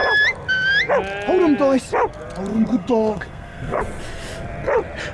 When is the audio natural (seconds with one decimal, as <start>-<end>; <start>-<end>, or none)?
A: 0.0-2.5; 3.8-5.1

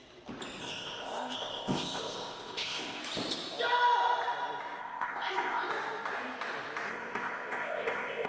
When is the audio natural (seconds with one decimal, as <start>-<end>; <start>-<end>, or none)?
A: 0.0-0.6; 3.0-4.8; 5.7-6.9

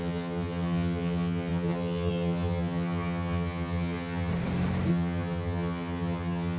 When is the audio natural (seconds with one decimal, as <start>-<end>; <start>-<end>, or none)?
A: 4.3-4.9

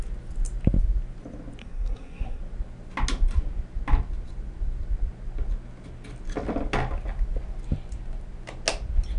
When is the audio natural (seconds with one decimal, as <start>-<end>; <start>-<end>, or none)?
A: 0.0-1.6; 2.4-9.2

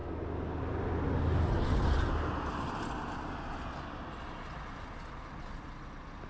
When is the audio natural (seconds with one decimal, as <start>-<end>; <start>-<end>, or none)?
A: 0.0-6.3

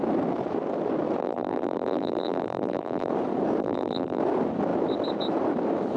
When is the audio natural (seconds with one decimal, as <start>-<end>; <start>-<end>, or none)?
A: 0.0-1.2; 3.1-3.6; 4.2-6.0

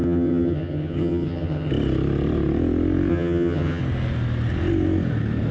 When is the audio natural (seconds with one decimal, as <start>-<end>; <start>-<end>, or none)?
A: 1.7-3.1; 3.8-5.5